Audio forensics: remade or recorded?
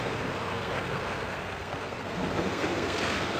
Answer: remade